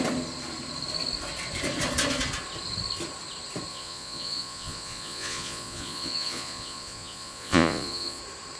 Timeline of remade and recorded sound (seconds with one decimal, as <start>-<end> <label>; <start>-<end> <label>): 0.0-3.7 recorded; 3.7-8.2 remade; 8.2-8.6 recorded